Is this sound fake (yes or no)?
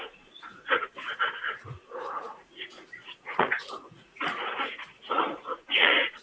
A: yes